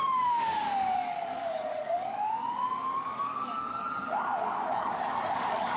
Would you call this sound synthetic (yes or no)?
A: yes